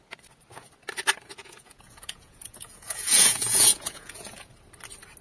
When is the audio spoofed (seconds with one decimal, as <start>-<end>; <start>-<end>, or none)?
1.4-4.5